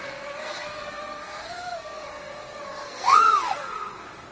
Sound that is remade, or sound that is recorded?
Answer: remade